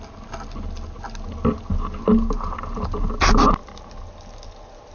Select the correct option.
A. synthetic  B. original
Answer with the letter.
B